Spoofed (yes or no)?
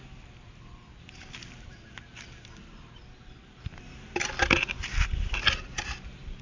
no